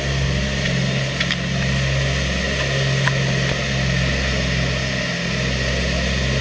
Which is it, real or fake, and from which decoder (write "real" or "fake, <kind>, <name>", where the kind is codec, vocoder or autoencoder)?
real